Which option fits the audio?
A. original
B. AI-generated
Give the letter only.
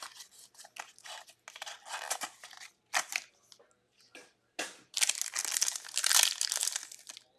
A